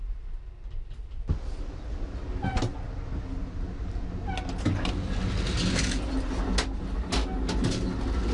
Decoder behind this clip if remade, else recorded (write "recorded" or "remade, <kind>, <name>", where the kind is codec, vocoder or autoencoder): recorded